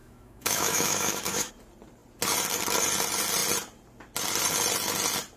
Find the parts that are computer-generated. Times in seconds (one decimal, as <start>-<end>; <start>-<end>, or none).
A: 0.0-1.5

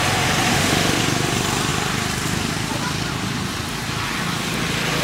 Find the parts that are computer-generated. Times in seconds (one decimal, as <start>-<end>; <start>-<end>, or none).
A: 0.5-1.0

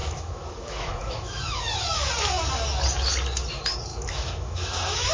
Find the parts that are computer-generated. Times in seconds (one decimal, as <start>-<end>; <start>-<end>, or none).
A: 0.0-2.1; 3.9-5.1